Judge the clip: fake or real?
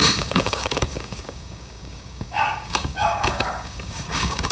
fake